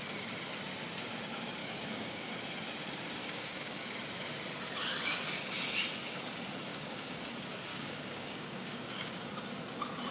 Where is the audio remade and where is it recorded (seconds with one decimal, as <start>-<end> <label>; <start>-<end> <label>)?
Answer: 0.0-1.6 recorded; 1.6-2.3 remade; 2.3-3.2 recorded; 3.2-3.9 remade; 3.9-6.7 recorded; 6.7-7.3 remade; 7.3-7.7 recorded; 7.7-9.2 remade; 9.2-10.1 recorded